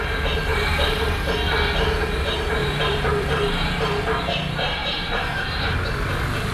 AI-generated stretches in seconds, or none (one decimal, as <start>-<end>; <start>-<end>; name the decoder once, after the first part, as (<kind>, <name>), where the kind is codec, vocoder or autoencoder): 0.5-1.3 (vocoder, BigVGAN v2); 2.6-4.0; 4.8-5.7